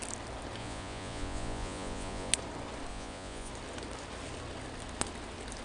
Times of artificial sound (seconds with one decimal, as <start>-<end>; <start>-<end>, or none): 0.6-2.3; 2.9-3.5